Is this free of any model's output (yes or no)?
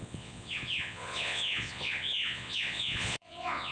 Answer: no